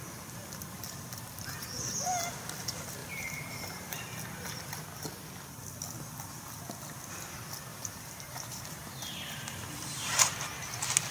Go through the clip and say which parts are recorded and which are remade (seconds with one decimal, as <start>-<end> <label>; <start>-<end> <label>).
0.0-3.0 recorded; 3.0-4.0 remade; 4.0-7.7 recorded; 7.7-10.4 remade; 10.4-11.1 recorded